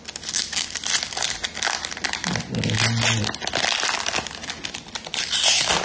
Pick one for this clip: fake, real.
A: real